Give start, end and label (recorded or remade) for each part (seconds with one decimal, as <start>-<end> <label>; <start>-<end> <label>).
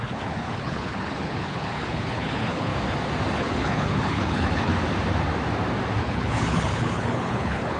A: 0.0-2.7 remade; 2.7-3.4 recorded; 3.4-4.7 remade; 4.7-6.0 recorded; 6.0-7.8 remade